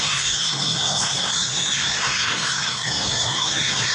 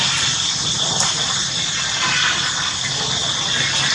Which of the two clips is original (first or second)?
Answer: second